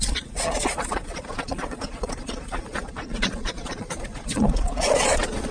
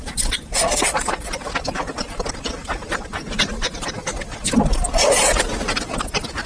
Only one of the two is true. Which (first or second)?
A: second